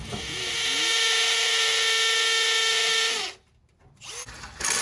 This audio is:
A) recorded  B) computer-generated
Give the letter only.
A